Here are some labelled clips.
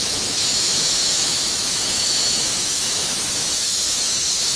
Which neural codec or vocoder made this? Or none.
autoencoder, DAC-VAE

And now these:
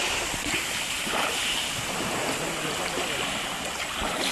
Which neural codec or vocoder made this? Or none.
none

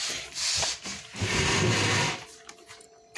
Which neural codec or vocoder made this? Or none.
none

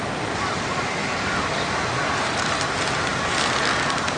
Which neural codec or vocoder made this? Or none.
none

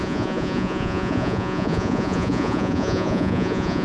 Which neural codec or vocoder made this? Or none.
vocoder, Vocos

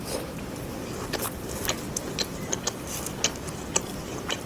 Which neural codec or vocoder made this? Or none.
none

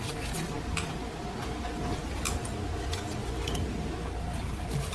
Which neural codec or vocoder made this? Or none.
none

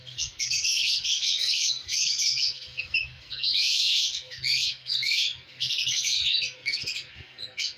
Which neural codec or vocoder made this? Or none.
codec, SNAC